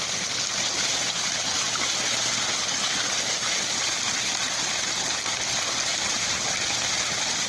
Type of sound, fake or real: real